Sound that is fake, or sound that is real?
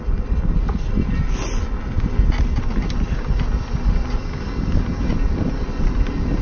real